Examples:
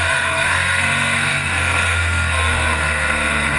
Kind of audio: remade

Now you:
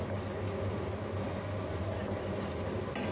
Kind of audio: recorded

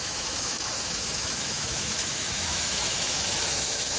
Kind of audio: remade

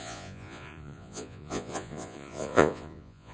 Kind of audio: remade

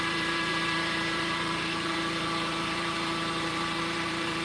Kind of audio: remade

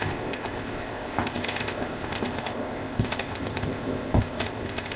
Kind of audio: remade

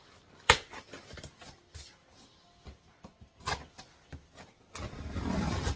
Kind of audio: recorded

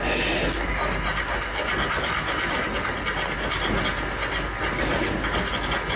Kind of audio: recorded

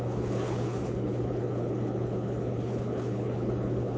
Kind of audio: remade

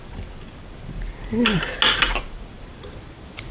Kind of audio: recorded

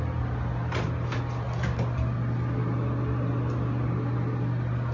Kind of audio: recorded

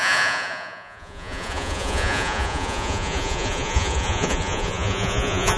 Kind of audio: remade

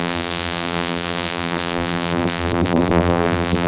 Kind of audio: remade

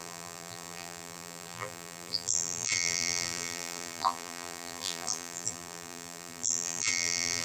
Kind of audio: remade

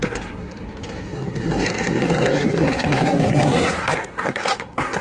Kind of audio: remade